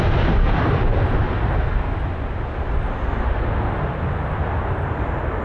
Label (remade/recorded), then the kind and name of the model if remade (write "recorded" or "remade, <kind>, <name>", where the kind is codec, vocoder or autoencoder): recorded